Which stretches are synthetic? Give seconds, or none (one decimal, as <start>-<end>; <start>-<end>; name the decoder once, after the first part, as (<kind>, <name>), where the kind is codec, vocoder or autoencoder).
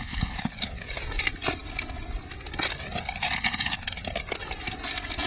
none